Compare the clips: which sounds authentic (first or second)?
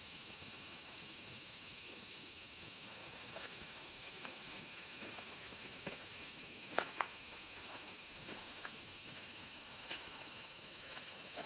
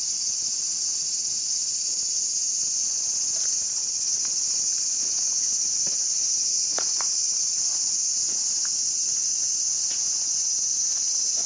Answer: second